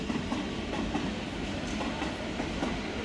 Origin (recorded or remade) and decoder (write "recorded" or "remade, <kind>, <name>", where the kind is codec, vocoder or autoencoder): recorded